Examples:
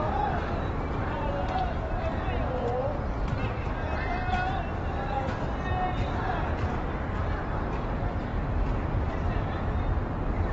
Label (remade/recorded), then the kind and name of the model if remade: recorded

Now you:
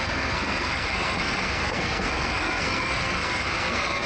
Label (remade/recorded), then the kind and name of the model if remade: remade, codec, SNAC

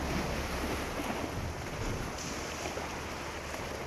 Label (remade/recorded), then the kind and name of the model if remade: recorded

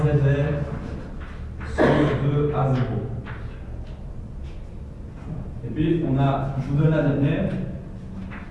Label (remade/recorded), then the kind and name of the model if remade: recorded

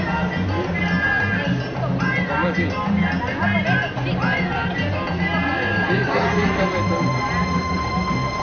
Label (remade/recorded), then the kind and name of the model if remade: recorded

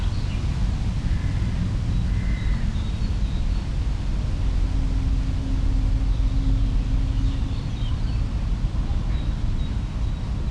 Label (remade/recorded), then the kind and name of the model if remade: recorded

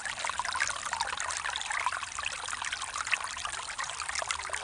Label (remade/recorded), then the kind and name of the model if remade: recorded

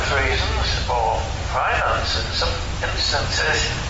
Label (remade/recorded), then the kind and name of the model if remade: recorded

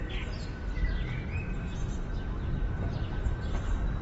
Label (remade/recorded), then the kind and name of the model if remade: remade, vocoder, BigVGAN v2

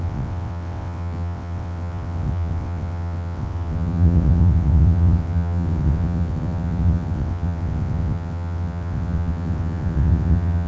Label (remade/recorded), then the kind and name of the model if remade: remade, vocoder, WaveNeXt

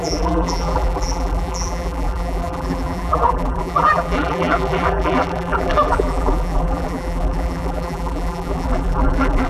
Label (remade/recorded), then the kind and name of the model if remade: remade, vocoder, BigVGAN v2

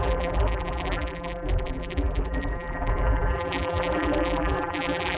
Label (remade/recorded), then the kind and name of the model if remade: remade, vocoder, BigVGAN v2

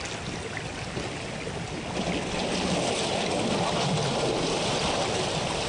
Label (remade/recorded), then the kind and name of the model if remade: recorded